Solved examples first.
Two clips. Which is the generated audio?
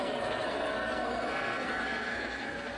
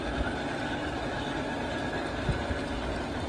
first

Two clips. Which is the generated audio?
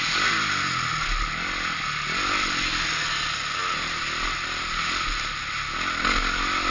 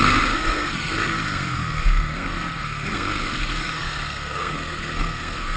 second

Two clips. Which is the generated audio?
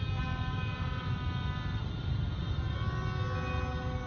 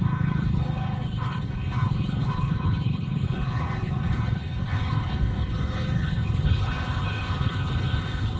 second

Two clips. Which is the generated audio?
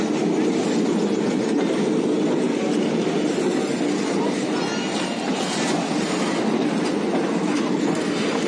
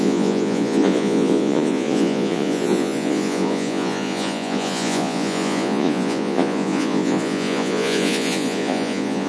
second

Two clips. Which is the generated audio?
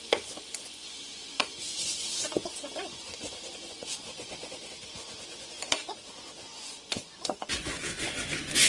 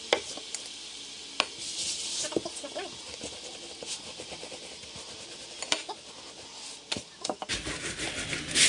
first